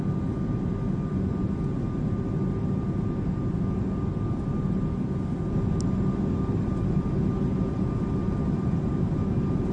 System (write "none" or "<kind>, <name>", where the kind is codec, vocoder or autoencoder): none